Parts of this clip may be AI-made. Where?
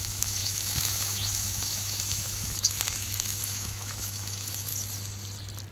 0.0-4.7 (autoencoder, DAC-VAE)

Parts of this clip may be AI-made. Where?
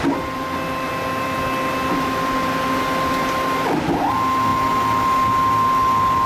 none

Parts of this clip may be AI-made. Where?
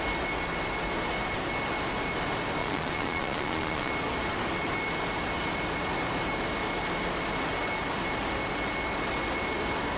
2.6-3.9 (vocoder, Vocos)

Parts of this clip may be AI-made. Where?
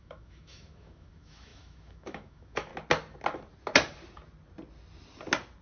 0.0-2.7 (autoencoder, DAC-VAE)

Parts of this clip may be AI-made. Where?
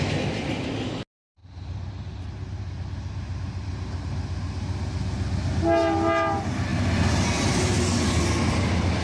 none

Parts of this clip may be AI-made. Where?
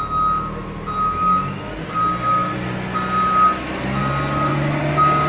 none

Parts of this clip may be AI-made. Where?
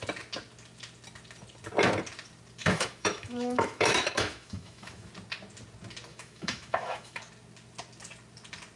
2.6-5.1 (autoencoder, DAC-VAE); 6.1-7.2